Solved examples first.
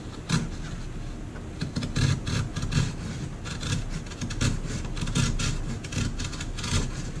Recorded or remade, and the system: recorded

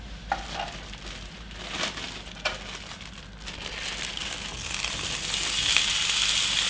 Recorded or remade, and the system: recorded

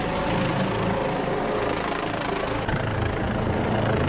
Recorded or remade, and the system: recorded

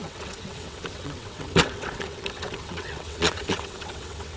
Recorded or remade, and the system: remade, vocoder, WaveNeXt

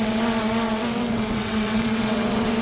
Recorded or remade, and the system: remade, vocoder, WaveNeXt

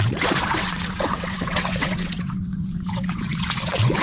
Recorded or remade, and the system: remade, vocoder, WaveNeXt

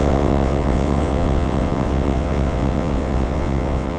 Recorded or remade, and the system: remade, vocoder, WaveNeXt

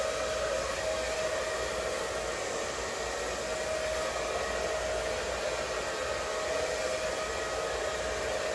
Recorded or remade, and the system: recorded